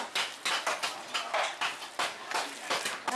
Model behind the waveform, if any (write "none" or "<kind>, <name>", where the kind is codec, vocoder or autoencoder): none